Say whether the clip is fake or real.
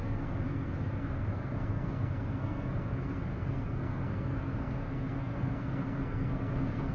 fake